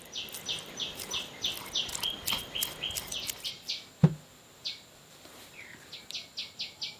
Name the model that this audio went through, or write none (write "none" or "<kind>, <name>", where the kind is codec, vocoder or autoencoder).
none